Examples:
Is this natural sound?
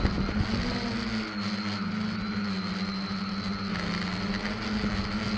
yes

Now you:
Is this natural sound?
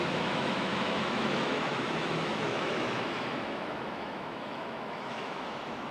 no